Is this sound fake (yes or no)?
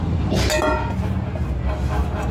no